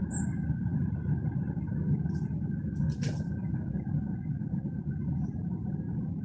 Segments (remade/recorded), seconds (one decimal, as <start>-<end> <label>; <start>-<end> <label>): 0.0-3.4 recorded; 3.4-4.0 remade; 4.0-6.2 recorded